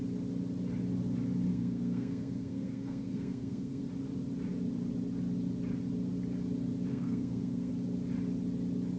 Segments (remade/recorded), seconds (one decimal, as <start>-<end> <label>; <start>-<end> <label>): 0.0-1.5 recorded; 1.5-3.8 remade; 3.8-6.9 recorded; 6.9-7.7 remade; 7.7-9.0 recorded